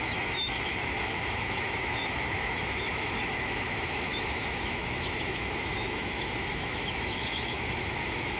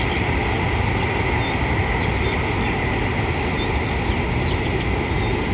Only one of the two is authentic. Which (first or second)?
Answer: second